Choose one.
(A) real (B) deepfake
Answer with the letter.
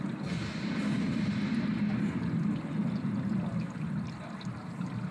A